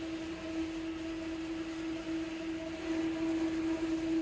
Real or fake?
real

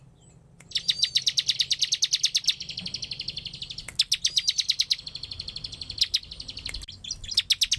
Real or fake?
real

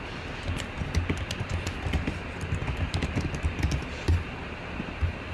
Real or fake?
real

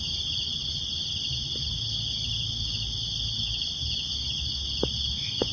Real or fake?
real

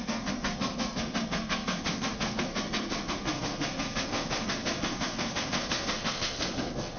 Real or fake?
fake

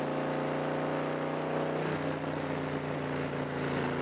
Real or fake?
real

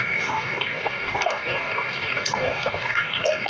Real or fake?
fake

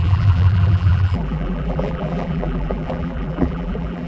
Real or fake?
fake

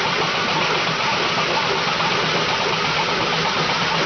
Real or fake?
real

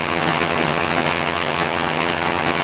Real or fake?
fake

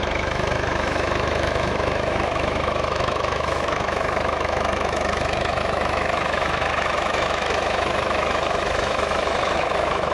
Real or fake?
fake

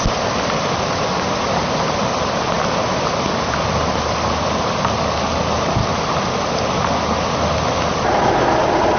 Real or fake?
real